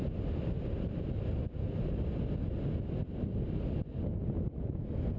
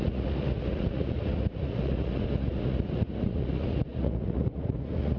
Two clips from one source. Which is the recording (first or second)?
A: first